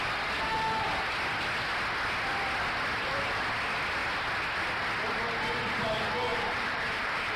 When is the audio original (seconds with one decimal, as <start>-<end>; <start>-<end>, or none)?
0.0-6.3